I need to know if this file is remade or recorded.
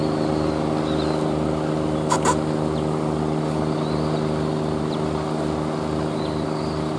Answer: recorded